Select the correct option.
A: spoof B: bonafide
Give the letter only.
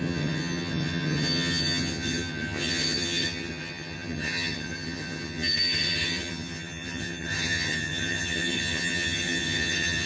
A